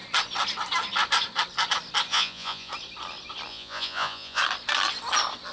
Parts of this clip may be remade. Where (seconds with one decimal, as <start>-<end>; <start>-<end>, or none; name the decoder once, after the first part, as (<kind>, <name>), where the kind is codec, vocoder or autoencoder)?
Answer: 2.1-2.7 (vocoder, Vocos); 3.5-4.4